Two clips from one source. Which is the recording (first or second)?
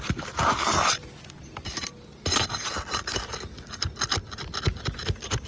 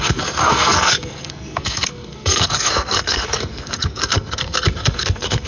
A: first